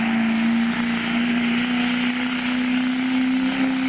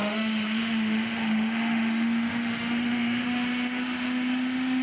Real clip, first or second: first